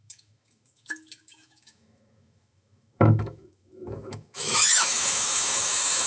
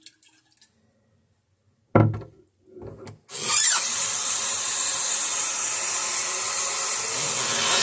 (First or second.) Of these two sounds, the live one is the second